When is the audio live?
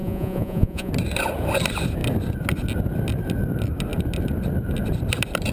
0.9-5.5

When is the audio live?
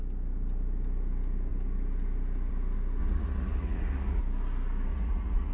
0.0-3.0; 4.2-4.9